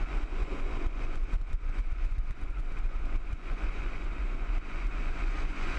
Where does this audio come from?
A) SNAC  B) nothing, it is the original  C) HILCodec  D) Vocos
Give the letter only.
D